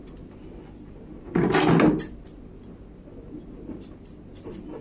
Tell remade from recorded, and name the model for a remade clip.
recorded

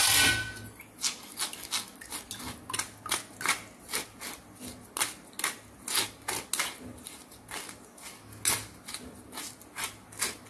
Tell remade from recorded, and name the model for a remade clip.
recorded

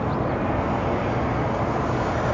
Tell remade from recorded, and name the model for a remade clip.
recorded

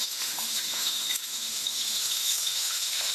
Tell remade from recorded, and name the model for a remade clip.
remade, autoencoder, DAC-VAE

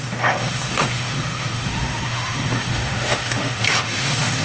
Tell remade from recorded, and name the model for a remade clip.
remade, autoencoder, DAC-VAE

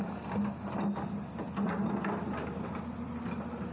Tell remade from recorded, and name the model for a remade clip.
recorded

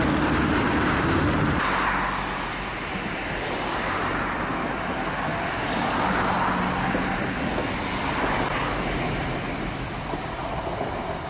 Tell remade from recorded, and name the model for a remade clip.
recorded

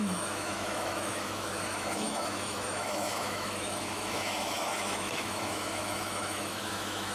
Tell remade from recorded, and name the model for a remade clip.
remade, autoencoder, DAC-VAE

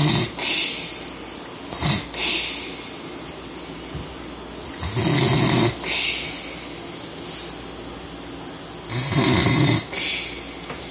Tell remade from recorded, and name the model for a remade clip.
recorded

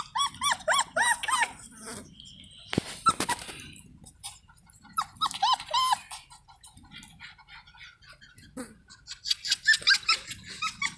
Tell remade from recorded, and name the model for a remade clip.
recorded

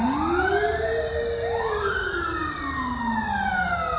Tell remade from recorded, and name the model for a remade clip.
recorded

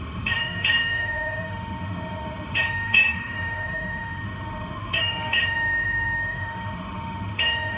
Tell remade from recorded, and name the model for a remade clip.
remade, autoencoder, DAC-VAE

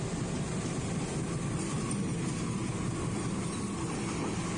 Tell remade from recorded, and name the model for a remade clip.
recorded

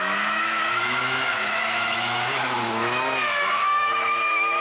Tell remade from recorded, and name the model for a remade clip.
remade, autoencoder, DAC-VAE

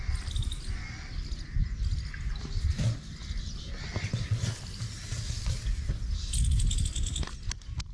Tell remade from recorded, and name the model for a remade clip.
recorded